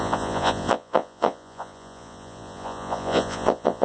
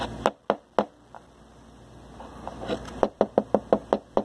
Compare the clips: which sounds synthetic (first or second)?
first